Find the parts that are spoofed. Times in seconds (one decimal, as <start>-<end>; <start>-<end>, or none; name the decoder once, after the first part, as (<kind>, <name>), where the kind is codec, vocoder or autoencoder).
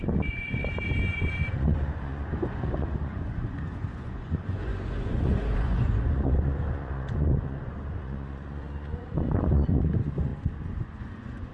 0.0-11.5 (vocoder, Vocos)